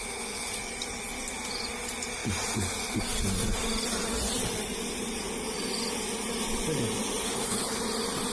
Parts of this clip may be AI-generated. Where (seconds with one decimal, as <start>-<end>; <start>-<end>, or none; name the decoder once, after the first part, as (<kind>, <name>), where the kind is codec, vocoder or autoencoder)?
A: 7.2-7.8 (codec, HILCodec)